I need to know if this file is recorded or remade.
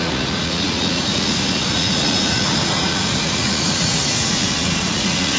remade